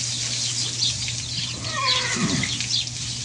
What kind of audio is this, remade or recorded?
recorded